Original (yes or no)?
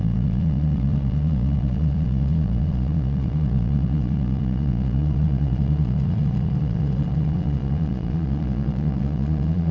no